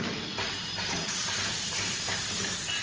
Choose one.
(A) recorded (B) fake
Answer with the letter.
B